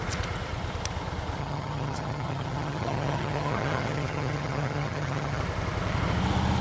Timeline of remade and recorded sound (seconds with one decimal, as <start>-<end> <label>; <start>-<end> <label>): 0.0-1.4 recorded; 1.4-5.4 remade; 5.4-6.6 recorded